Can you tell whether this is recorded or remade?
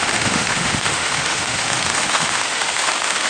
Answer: remade